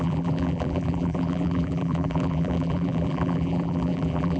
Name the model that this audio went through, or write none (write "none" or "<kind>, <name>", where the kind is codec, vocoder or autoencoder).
vocoder, BigVGAN v2